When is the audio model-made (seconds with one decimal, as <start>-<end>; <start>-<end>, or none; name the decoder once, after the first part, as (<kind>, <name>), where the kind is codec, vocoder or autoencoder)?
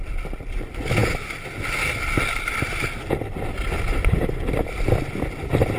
none